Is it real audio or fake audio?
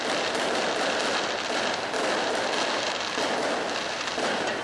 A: real